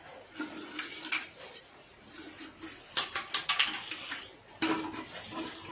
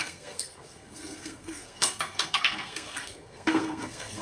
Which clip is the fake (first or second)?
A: second